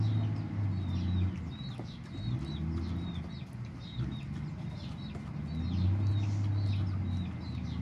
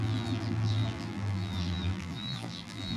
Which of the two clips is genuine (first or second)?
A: first